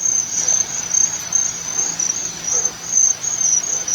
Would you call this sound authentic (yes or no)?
yes